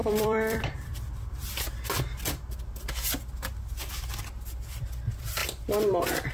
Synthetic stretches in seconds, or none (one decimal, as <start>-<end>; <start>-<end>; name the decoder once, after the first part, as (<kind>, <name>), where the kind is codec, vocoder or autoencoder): 0.0-0.9 (vocoder, BigVGAN v2)